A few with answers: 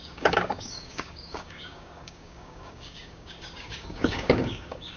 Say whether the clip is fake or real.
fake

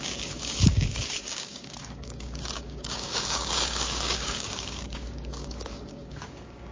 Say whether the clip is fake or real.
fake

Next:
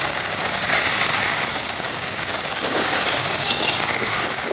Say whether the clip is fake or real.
fake